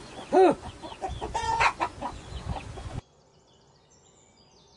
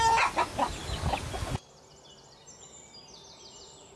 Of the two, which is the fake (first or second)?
first